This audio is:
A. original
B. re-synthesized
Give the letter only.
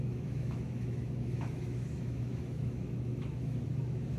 B